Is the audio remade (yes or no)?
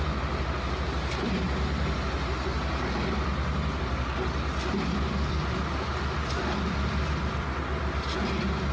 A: no